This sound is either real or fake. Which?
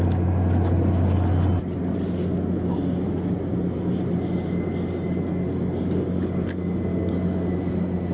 real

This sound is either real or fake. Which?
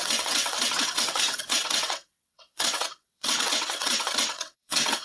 fake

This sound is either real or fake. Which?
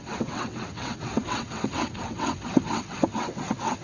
fake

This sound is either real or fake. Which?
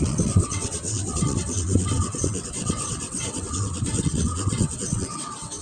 fake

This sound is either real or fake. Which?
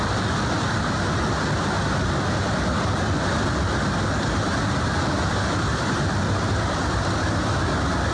real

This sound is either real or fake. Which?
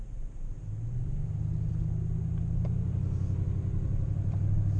real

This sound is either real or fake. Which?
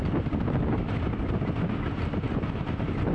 real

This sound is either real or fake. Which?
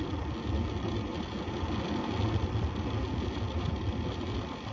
real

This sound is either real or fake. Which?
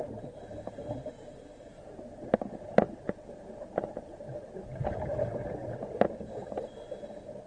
real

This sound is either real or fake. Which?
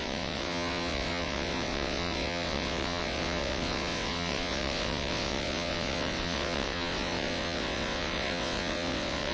fake